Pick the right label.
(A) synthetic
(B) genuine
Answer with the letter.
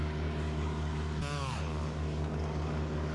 A